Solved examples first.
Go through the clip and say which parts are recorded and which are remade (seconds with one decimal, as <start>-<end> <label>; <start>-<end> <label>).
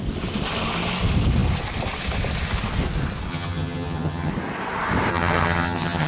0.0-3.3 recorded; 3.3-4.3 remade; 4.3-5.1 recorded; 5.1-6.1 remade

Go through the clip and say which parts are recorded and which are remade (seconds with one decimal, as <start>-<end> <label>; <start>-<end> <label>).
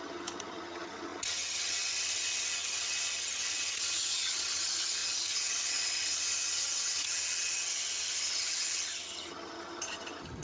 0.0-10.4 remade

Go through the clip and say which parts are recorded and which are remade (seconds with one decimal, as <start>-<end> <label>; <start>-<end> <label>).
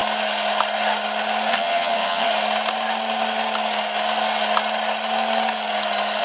0.0-1.5 recorded; 1.5-2.3 remade; 2.3-6.2 recorded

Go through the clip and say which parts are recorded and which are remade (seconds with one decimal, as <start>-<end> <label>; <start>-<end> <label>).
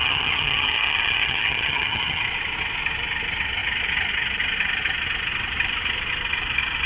0.0-2.2 remade; 2.2-6.9 recorded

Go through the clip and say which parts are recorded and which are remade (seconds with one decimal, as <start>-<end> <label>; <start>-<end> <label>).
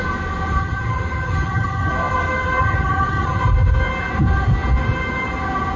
0.0-0.6 recorded; 0.6-1.9 remade; 1.9-2.6 recorded; 2.6-3.4 remade; 3.4-5.8 recorded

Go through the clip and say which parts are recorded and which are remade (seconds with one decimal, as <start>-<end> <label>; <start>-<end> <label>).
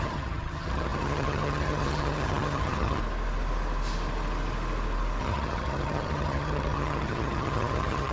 0.0-3.0 remade; 3.0-5.2 recorded; 5.2-8.1 remade